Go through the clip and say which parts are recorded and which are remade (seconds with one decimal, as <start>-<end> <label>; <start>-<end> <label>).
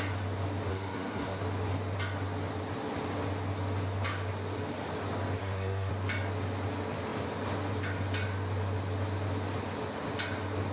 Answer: 0.0-0.7 recorded; 0.7-1.4 remade; 1.4-5.4 recorded; 5.4-5.9 remade; 5.9-10.7 recorded